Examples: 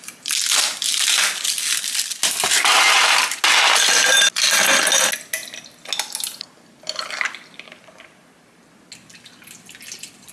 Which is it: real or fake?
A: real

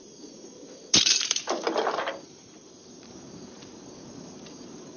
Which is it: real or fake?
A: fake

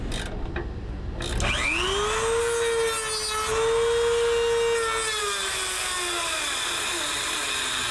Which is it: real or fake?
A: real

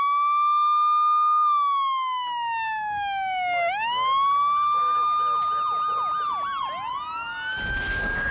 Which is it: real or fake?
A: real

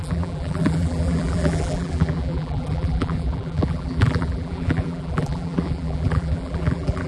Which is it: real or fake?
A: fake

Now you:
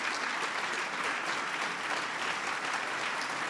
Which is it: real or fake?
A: real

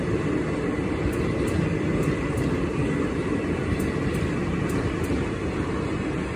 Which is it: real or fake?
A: real